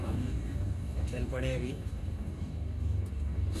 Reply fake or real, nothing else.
fake